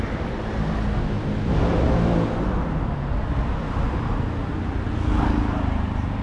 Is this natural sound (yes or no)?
yes